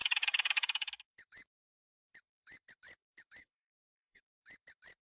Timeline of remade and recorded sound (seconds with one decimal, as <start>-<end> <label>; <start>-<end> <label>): 0.0-0.9 remade; 0.9-3.4 recorded; 3.4-4.2 remade; 4.2-5.1 recorded